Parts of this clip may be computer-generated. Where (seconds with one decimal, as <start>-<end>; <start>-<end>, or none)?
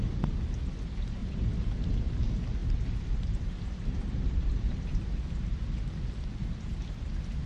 1.2-1.9; 2.6-5.2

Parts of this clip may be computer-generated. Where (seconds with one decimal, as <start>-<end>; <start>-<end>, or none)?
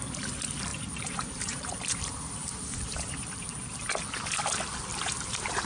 0.7-3.6; 4.9-5.7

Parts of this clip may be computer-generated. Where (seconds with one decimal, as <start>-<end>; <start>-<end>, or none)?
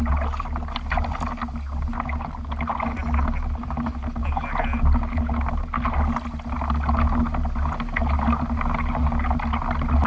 none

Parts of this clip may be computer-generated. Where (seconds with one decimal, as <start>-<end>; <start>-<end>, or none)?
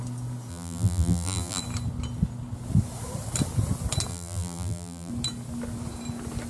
0.5-1.6; 4.1-5.1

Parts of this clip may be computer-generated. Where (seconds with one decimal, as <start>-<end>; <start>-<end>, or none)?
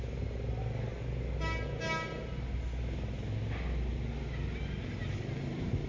5.0-5.9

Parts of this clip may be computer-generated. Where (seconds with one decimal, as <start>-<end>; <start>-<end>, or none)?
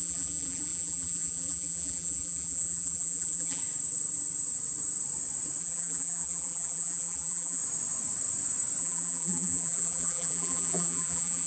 0.0-3.6; 5.6-7.6; 8.8-11.5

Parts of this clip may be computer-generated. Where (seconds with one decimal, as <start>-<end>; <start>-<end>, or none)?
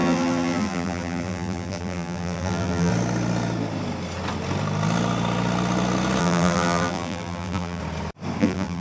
0.0-2.9; 6.2-7.8; 8.4-8.8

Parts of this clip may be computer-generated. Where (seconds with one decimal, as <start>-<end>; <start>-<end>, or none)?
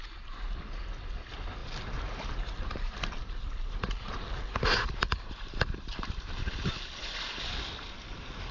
1.6-6.7